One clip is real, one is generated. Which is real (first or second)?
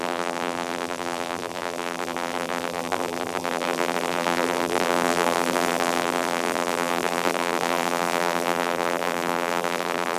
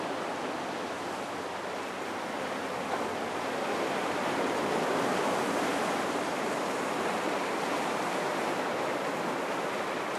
second